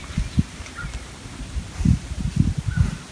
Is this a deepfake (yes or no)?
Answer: no